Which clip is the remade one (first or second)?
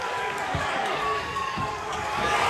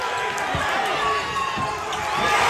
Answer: first